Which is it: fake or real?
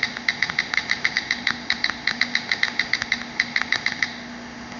fake